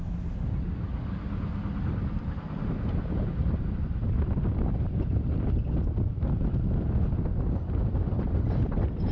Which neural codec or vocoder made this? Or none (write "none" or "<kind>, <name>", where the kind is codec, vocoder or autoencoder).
none